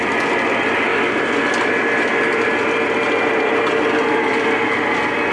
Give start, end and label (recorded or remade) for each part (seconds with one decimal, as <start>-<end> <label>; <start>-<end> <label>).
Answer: 0.0-5.3 recorded